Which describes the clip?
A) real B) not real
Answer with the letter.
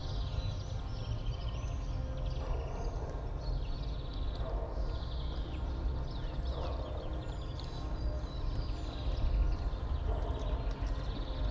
A